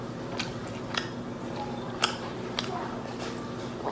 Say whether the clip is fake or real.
real